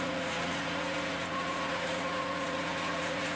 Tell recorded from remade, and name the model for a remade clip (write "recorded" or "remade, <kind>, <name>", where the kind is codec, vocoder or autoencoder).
remade, vocoder, Vocos